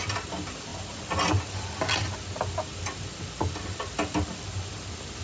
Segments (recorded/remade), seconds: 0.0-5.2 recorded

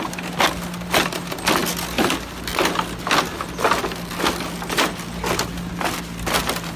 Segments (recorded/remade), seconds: 0.0-6.8 recorded

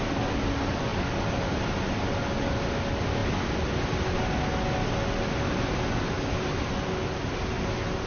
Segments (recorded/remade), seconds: 0.0-8.1 recorded

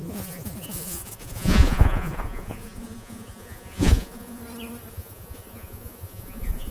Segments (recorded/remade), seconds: 0.0-4.4 remade; 4.4-4.9 recorded; 4.9-6.7 remade

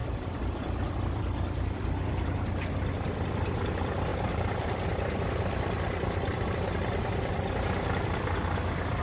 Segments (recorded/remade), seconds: 0.0-2.9 remade; 2.9-4.1 recorded; 4.1-9.0 remade

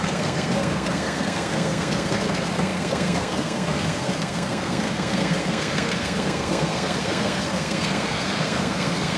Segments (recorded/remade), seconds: 0.0-9.2 remade